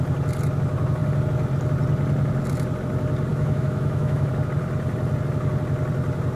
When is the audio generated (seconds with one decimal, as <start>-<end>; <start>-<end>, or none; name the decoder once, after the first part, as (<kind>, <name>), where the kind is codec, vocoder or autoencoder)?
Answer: 3.3-4.3 (autoencoder, DAC-VAE)